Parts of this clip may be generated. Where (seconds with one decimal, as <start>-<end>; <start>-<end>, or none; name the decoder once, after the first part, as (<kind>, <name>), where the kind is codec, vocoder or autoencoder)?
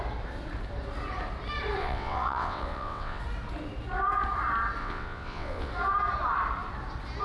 1.8-3.2 (vocoder, WaveNeXt); 4.8-5.7